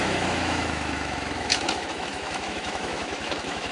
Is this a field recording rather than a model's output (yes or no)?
no